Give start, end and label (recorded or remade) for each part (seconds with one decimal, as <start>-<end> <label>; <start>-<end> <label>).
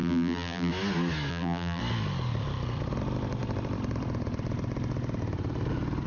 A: 0.0-0.7 remade; 0.7-1.3 recorded; 1.3-1.8 remade; 1.8-6.1 recorded